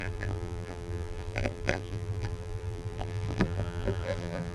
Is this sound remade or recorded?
remade